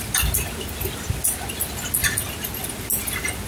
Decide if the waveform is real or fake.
real